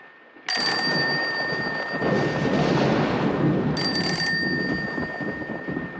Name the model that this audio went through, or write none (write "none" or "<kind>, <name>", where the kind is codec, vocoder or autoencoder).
none